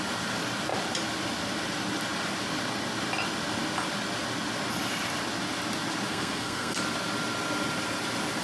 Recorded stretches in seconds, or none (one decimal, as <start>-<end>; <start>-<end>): 0.0-6.1; 6.8-8.4